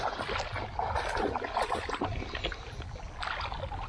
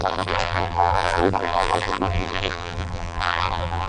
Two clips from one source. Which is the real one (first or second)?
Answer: first